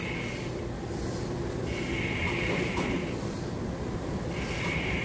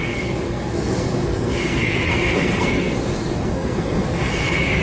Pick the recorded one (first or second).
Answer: first